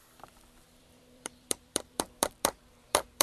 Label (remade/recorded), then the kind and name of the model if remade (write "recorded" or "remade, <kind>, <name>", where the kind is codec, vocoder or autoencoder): remade, vocoder, BigVGAN v2